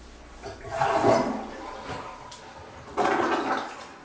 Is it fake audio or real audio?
real